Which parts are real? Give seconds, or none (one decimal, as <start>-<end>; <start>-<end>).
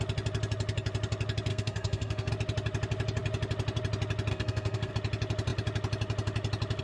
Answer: 0.0-1.5; 2.3-4.3; 4.9-6.8